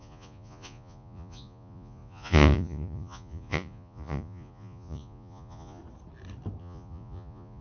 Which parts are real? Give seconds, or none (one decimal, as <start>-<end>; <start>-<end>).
5.8-6.6